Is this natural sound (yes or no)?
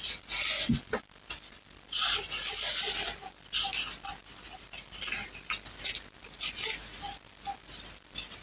yes